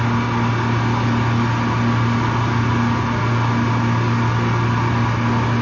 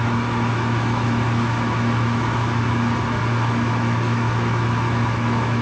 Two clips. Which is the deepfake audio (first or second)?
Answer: second